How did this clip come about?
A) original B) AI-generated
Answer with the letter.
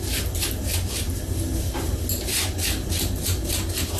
A